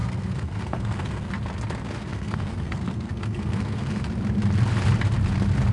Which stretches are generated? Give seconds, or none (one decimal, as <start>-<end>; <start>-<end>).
0.0-1.3; 2.1-4.1